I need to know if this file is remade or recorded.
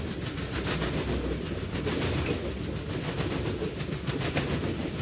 recorded